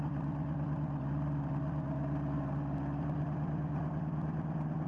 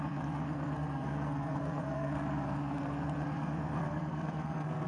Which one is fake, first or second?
second